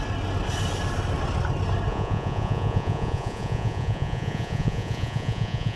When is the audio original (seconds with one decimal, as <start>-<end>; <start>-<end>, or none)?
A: 0.0-1.9